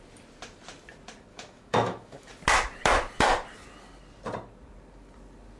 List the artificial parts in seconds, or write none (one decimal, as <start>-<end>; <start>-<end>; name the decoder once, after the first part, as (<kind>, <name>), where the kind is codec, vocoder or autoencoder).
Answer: 1.3-2.3 (autoencoder, DAC-VAE)